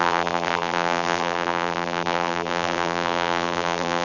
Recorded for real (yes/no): no